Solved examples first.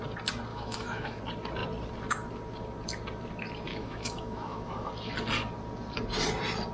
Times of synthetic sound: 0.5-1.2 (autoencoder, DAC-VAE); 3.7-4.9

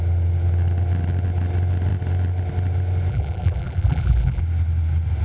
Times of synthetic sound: 3.1-4.4 (vocoder, BigVGAN v2)

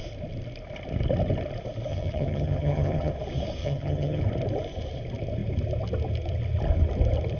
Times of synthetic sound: 1.9-3.1 (vocoder, HiFi-GAN); 3.6-4.2

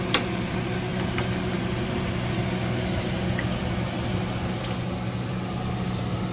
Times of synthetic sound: none

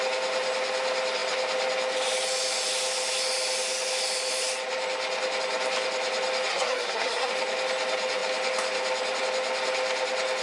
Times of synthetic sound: 6.5-7.3 (codec, SNAC)

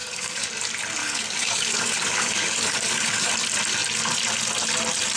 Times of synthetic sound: 0.0-0.5 (codec, DAC); 1.0-3.3

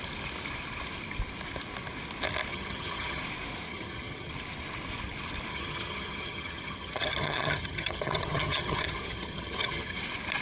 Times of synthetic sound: 2.5-3.2 (vocoder, HiFi-GAN); 3.7-4.3; 5.5-10.0